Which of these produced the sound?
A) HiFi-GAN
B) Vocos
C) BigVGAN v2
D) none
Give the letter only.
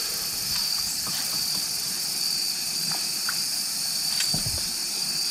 C